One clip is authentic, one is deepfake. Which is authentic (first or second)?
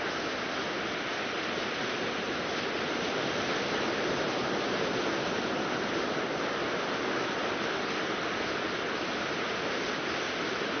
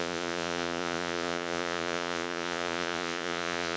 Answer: first